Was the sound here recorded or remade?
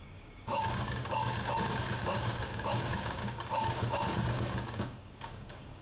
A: remade